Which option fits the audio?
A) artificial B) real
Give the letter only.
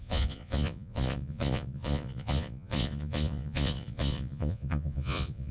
A